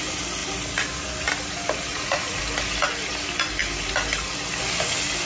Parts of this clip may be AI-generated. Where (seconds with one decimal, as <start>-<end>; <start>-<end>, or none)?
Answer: 1.9-2.4